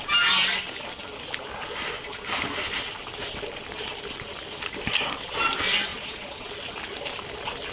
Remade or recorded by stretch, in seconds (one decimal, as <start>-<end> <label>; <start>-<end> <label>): 0.0-5.9 recorded; 5.9-6.4 remade; 6.4-7.7 recorded